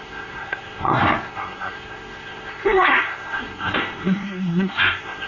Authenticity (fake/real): fake